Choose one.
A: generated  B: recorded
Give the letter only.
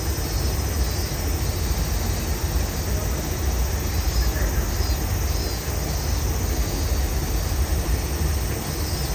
B